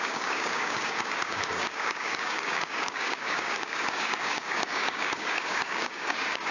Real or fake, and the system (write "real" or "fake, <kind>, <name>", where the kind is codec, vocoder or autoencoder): fake, codec, DAC